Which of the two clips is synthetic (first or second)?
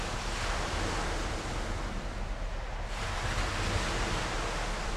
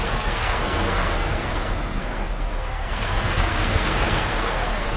second